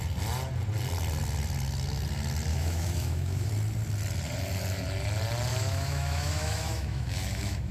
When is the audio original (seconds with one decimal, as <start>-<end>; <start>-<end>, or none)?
0.0-2.5; 3.5-5.5